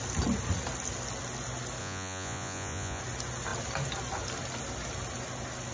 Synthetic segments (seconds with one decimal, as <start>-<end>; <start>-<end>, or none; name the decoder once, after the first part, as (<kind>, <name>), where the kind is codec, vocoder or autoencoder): 1.8-3.0 (vocoder, Vocos)